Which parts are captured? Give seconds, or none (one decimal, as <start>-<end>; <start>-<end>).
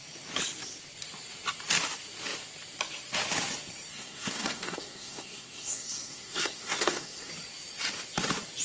0.0-3.9; 7.3-8.6